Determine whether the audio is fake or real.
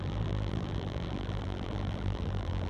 fake